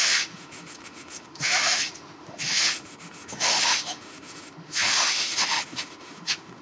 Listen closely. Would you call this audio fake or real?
fake